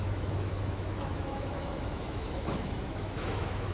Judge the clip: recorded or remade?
remade